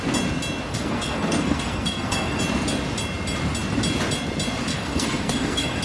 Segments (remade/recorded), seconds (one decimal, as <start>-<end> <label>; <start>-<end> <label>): 0.0-0.7 recorded; 0.7-2.4 remade; 2.4-4.7 recorded; 4.7-5.8 remade